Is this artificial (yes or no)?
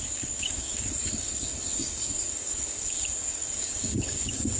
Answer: yes